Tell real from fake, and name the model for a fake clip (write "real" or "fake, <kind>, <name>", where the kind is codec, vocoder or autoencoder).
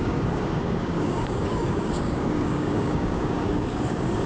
fake, codec, DAC